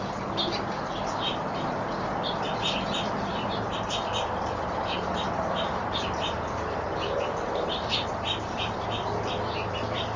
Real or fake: fake